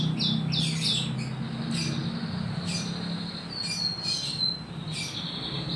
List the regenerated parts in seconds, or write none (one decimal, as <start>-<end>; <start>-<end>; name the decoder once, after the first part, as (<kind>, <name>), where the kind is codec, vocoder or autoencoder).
none